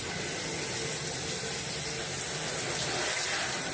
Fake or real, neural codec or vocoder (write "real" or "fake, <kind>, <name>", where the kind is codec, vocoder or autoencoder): real